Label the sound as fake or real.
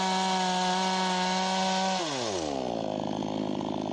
real